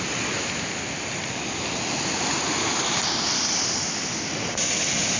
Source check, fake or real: real